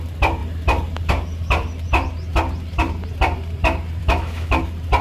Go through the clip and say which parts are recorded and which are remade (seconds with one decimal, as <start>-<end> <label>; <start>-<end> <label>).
0.0-4.0 recorded; 4.0-4.6 remade; 4.6-5.0 recorded